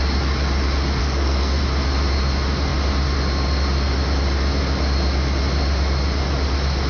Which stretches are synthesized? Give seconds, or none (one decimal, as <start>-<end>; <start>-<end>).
1.0-1.6